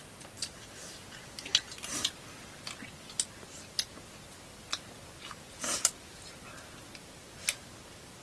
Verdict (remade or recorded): recorded